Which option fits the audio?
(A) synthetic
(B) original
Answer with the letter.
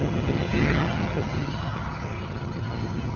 A